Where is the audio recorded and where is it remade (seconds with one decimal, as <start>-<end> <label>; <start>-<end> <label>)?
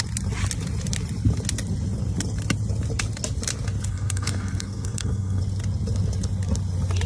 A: 0.0-3.9 recorded; 3.9-5.4 remade; 5.4-7.1 recorded